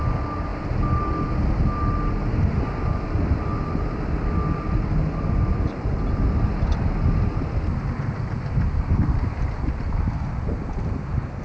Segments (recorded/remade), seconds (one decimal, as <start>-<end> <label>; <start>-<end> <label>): 0.0-11.4 recorded